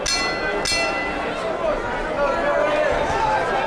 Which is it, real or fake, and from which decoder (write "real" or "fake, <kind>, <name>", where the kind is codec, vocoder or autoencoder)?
real